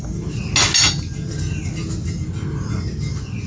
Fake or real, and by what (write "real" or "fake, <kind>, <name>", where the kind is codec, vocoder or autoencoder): real